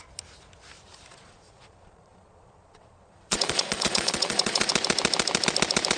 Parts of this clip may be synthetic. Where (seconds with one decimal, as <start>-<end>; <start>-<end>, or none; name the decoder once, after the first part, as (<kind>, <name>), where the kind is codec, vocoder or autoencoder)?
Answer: 1.1-4.7 (vocoder, Vocos)

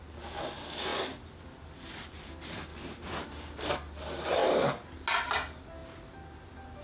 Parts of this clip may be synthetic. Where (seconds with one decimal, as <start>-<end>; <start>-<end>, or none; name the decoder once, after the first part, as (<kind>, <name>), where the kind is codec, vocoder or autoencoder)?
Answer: 2.7-3.7 (vocoder, BigVGAN v2)